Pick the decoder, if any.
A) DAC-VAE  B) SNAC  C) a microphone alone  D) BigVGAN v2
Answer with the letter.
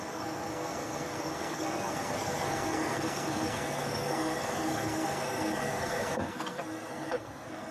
B